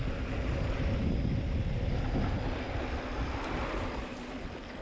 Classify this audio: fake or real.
real